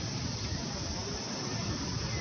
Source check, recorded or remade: recorded